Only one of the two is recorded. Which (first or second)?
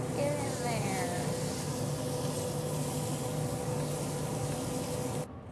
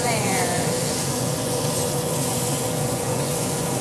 first